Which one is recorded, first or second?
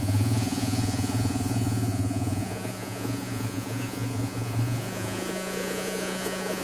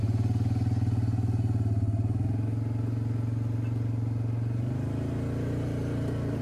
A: second